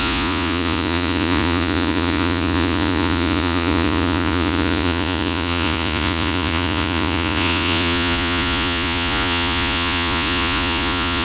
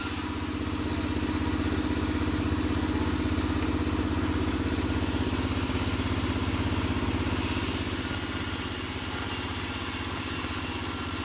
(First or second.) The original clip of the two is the second